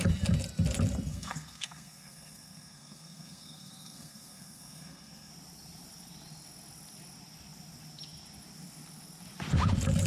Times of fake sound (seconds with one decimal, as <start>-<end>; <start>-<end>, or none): 1.1-5.3